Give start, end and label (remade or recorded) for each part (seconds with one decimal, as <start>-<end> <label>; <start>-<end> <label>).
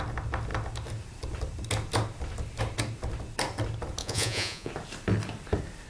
0.0-4.0 recorded; 4.0-4.7 remade; 4.7-5.9 recorded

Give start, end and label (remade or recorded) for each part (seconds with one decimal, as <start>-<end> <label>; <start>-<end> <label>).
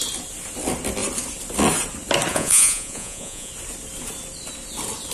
0.0-2.3 recorded; 2.3-3.5 remade; 3.5-5.1 recorded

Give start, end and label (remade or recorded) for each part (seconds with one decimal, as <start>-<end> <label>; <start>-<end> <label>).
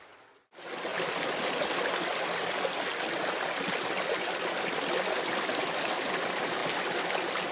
0.0-7.5 recorded